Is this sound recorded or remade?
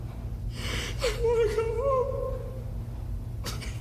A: recorded